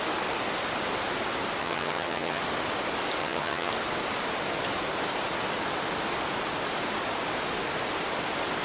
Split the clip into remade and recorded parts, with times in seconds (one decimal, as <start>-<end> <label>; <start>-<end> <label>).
0.0-1.6 recorded; 1.6-2.4 remade; 2.4-3.2 recorded; 3.2-3.7 remade; 3.7-8.6 recorded